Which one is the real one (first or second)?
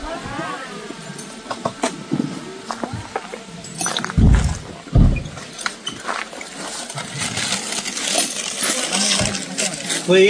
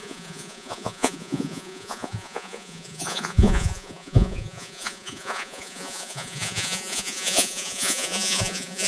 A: first